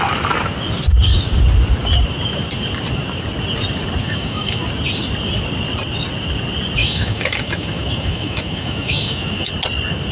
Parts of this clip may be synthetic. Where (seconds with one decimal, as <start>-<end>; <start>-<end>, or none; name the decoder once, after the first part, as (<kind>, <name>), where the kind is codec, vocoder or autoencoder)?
4.0-4.6 (autoencoder, DAC-VAE); 6.8-9.5